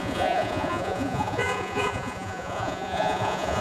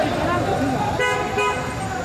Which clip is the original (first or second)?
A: second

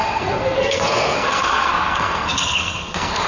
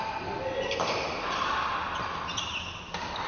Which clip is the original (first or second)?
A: second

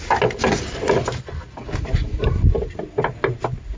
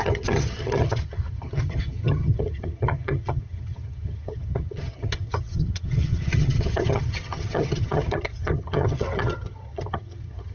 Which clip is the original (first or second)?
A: first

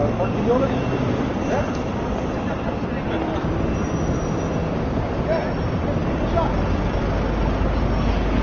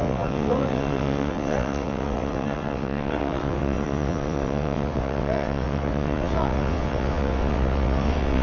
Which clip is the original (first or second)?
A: first